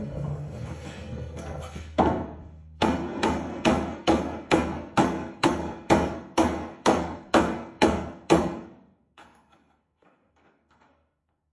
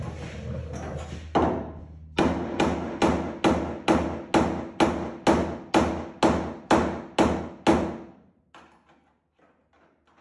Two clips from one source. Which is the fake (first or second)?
first